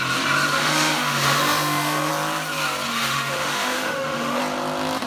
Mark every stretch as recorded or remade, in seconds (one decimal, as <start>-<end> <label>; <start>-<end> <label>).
0.0-0.5 recorded; 0.5-2.1 remade; 2.1-2.9 recorded; 2.9-4.4 remade; 4.4-5.1 recorded